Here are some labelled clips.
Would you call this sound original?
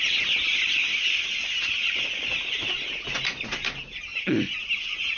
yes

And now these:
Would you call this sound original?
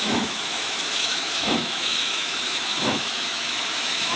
no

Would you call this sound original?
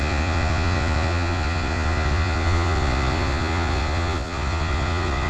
no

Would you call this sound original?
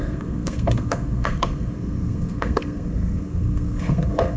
no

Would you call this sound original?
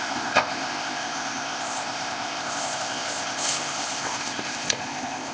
no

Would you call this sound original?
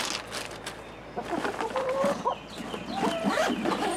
yes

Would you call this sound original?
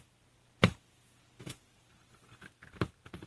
yes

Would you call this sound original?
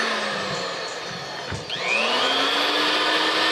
yes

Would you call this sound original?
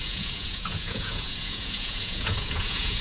no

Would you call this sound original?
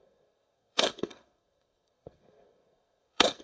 no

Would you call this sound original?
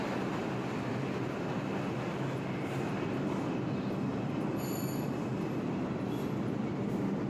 yes